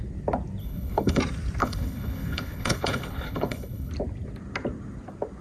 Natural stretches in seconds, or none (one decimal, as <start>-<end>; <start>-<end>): 0.0-0.6; 1.2-1.6; 3.9-5.4